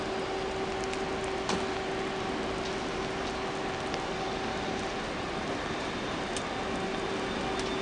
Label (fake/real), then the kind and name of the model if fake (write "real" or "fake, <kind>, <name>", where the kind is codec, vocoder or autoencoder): real